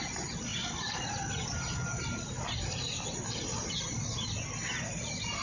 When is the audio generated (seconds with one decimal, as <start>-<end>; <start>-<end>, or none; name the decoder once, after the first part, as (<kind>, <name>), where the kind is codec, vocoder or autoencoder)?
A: none